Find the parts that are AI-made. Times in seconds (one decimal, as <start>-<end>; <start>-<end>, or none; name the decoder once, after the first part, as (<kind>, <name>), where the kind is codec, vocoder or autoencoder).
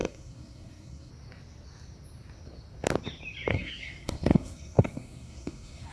0.0-1.1 (codec, SNAC); 3.5-5.9